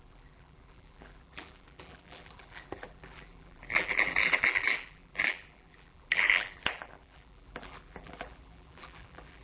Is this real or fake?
fake